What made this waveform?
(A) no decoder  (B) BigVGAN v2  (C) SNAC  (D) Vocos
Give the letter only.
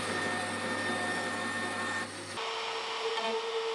A